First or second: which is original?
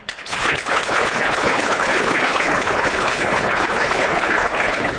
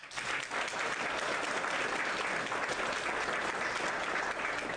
second